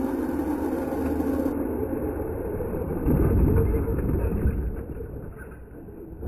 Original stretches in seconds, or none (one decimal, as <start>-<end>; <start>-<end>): 0.0-1.8; 3.2-4.3; 5.3-6.3